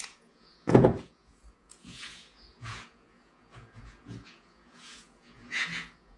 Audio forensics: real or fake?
fake